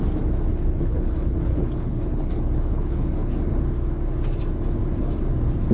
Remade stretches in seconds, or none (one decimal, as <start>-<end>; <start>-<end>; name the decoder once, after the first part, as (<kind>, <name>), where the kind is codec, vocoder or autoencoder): 0.5-3.4 (codec, HILCodec)